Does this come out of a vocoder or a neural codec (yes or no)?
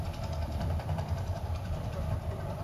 yes